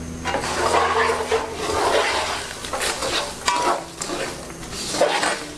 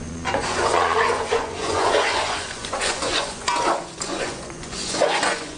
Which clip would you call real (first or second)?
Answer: first